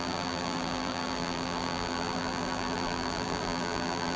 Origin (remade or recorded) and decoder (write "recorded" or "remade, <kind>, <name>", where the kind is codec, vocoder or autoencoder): remade, vocoder, BigVGAN v2